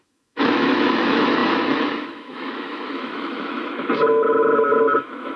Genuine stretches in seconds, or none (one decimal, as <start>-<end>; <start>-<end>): none